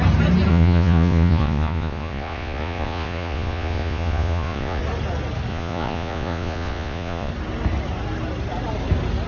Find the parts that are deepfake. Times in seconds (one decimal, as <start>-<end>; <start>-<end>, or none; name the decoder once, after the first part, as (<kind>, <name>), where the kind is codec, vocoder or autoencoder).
0.5-4.8 (vocoder, Vocos); 5.5-7.3